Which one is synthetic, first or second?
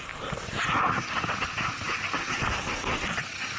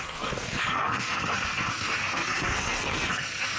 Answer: second